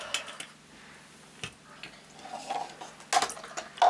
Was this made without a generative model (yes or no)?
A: yes